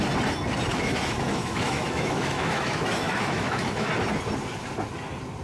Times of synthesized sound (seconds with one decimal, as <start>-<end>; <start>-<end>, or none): 0.7-3.9